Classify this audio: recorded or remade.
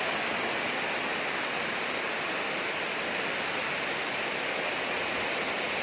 recorded